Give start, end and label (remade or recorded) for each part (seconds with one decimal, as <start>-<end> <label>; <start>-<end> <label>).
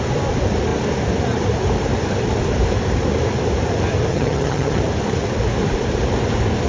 0.0-4.1 recorded; 4.1-4.8 remade; 4.8-6.7 recorded